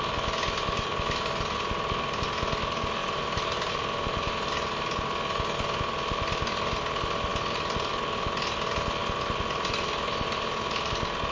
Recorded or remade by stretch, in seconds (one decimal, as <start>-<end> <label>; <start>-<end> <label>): 0.0-3.0 recorded; 3.0-3.7 remade; 3.7-11.3 recorded